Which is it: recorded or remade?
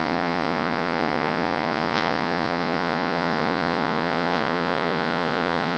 remade